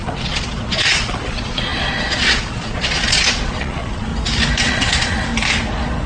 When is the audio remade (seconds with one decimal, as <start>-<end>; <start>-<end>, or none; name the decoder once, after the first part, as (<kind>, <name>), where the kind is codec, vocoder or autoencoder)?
0.0-4.1 (vocoder, Vocos); 4.6-5.3